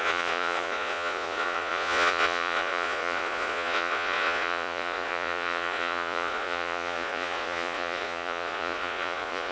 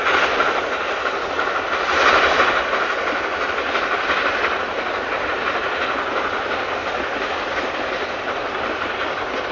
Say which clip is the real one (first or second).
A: second